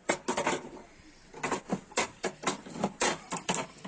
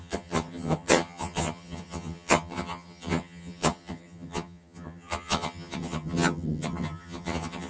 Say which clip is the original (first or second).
first